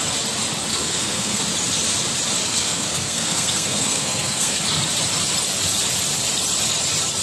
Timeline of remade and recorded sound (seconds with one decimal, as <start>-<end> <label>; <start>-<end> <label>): 0.0-0.7 recorded; 0.7-1.4 remade; 1.4-2.4 recorded; 2.4-4.6 remade; 4.6-7.2 recorded